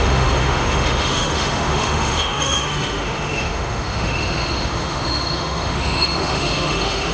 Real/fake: fake